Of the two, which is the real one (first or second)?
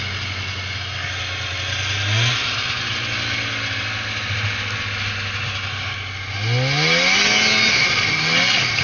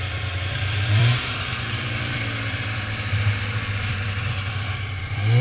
first